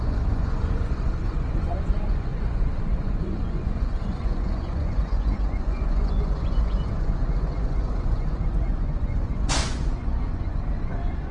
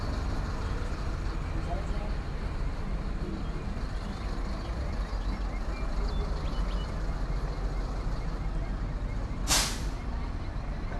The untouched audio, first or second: second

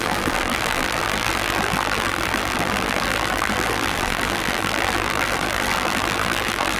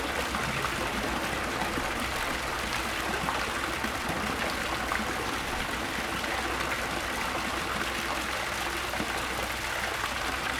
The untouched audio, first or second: second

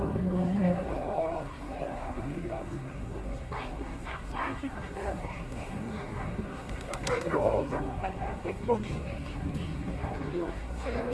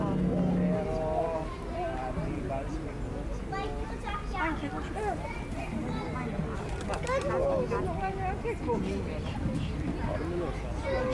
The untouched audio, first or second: second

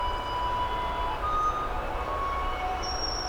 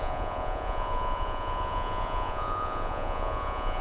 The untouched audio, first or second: first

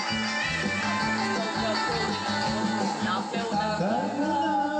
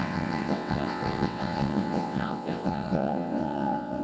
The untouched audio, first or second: first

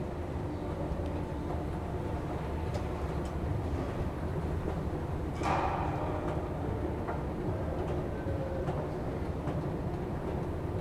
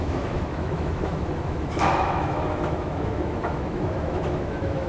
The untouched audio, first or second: first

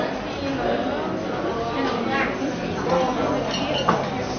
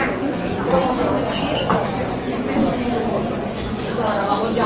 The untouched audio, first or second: first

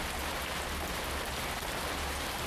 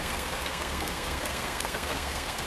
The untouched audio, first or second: first